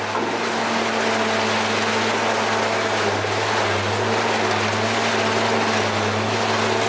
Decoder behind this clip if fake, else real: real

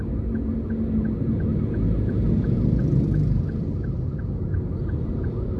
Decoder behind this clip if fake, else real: real